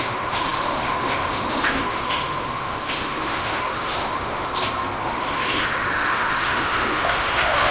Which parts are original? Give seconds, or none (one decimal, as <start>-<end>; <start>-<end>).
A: 4.5-5.0